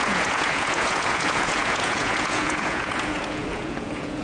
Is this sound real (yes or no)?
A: no